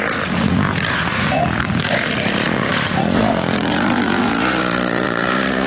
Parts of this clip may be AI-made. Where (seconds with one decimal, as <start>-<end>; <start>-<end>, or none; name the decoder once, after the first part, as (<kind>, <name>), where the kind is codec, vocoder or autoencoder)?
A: 0.0-5.7 (vocoder, Vocos)